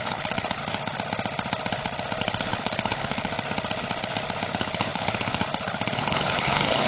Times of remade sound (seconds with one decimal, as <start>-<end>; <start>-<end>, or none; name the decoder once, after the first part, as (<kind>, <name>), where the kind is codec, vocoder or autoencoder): 0.0-0.6 (codec, HILCodec); 2.2-3.3; 4.5-6.9